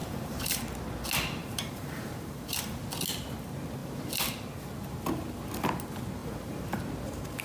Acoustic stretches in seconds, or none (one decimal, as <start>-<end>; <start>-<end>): 0.6-1.4; 2.8-6.2; 6.8-7.4